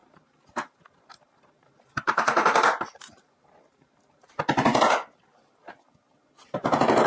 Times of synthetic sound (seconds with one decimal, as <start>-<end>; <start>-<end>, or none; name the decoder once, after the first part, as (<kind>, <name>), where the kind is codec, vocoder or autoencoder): 0.0-4.3 (vocoder, BigVGAN v2)